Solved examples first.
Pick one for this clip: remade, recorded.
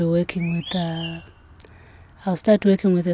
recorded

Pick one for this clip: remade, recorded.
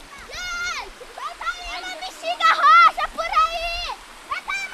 recorded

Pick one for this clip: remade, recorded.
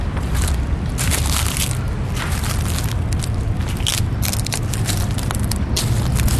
recorded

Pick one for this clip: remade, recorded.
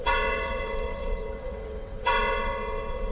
remade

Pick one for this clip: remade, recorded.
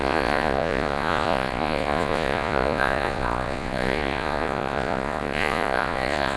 remade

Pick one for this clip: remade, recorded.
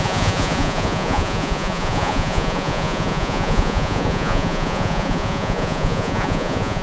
remade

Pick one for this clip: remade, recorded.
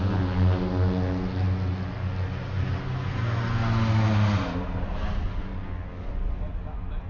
recorded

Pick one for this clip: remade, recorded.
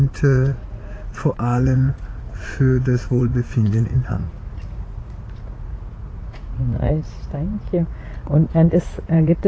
remade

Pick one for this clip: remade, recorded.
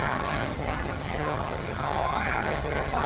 remade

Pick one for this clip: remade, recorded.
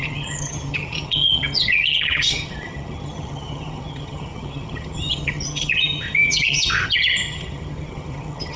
remade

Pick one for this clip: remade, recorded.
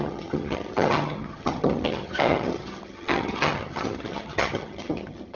remade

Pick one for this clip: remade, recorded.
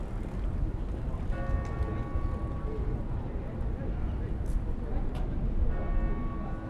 recorded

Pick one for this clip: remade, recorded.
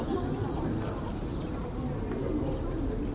recorded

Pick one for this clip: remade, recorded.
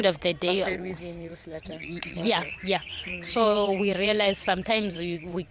remade